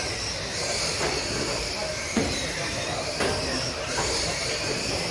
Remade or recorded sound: remade